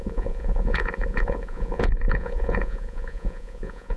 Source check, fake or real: fake